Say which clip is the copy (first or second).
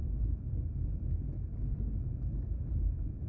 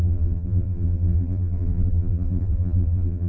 second